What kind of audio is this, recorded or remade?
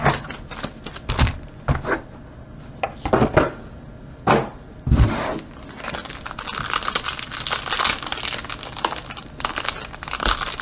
recorded